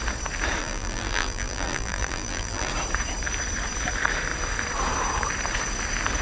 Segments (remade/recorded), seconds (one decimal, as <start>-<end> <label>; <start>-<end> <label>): 0.0-0.6 recorded; 0.6-2.7 remade; 2.7-6.2 recorded